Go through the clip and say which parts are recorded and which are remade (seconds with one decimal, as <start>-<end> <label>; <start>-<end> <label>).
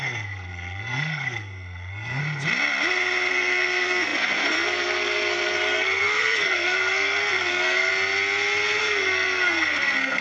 0.0-2.2 remade; 2.2-3.3 recorded; 3.3-7.9 remade; 7.9-8.8 recorded; 8.8-10.2 remade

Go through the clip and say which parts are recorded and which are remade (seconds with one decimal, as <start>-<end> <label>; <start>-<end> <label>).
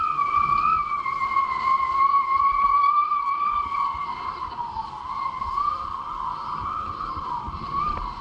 0.0-8.2 recorded